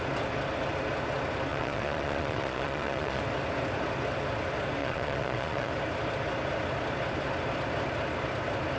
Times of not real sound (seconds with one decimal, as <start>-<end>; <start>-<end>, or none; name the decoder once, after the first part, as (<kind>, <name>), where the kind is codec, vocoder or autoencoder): 1.5-3.2 (vocoder, Vocos); 4.8-5.7